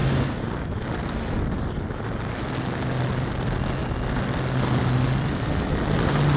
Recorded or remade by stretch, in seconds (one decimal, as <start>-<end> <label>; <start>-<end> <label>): 0.0-6.4 recorded